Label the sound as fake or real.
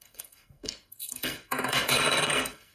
fake